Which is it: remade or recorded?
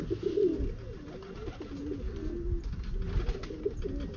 recorded